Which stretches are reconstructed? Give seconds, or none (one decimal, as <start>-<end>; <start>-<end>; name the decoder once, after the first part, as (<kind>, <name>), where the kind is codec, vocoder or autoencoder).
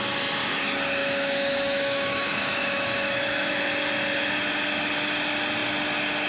1.0-3.6 (autoencoder, DAC-VAE)